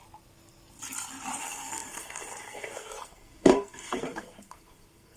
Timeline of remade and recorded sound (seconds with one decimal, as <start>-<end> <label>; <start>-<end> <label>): 0.0-1.4 recorded; 1.4-5.2 remade